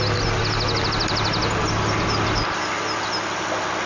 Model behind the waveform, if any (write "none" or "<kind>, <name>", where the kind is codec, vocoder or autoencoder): none